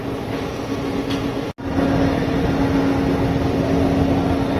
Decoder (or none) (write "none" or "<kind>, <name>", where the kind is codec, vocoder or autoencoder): none